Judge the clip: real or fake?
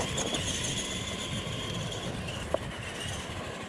real